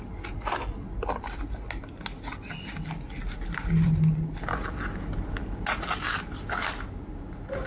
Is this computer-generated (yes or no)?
no